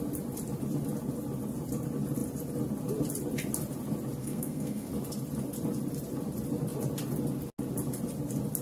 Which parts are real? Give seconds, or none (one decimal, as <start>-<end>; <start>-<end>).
0.0-4.2; 4.9-8.6